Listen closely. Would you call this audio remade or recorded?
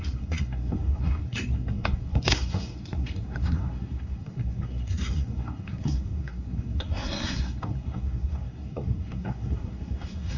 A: remade